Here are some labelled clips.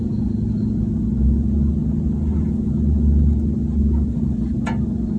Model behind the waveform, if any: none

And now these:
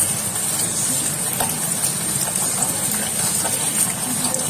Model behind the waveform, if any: none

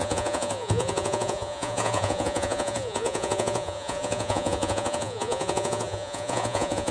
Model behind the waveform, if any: vocoder, Vocos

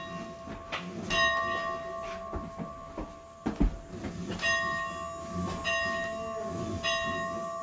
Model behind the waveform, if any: none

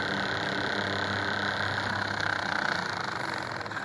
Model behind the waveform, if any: none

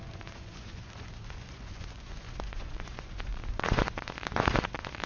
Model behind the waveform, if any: vocoder, Vocos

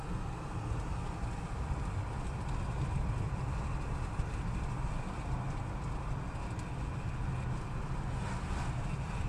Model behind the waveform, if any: none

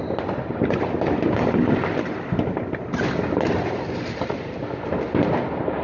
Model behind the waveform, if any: none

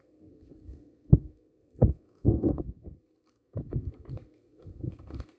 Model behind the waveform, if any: codec, SNAC